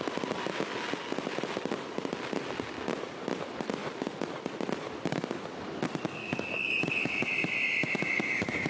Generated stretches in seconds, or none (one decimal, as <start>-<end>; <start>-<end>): 6.2-6.9